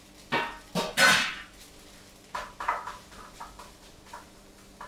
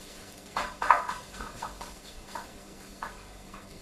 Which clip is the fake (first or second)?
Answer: second